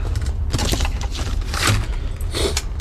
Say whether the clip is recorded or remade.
recorded